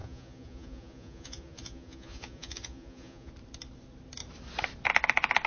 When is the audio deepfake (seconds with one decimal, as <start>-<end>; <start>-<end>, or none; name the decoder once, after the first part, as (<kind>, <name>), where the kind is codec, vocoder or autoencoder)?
0.0-3.3 (vocoder, Vocos)